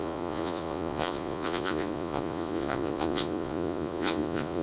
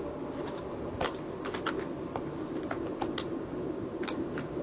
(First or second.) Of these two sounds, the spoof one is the first